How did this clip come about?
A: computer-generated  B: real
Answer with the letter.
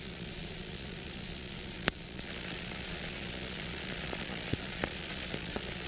A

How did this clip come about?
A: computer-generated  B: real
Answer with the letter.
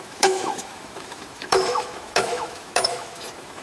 A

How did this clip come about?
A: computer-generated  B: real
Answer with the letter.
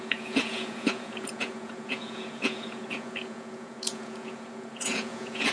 A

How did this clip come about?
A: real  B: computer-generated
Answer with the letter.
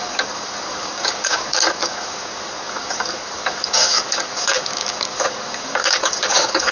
B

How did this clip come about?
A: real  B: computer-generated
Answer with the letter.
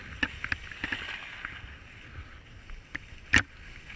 A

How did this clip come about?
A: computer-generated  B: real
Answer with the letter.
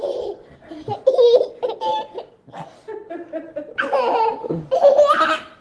B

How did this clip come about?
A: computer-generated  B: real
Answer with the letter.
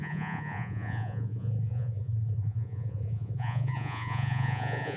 A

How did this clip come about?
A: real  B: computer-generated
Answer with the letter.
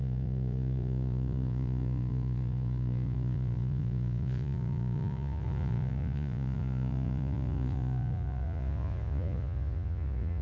B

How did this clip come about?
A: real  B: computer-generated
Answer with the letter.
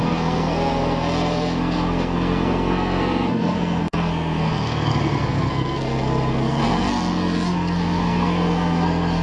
B